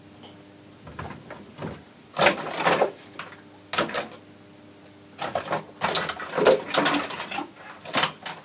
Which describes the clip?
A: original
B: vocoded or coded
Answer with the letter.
A